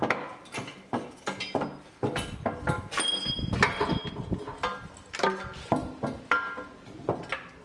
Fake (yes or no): no